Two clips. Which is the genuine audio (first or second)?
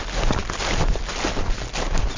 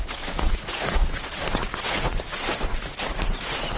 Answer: first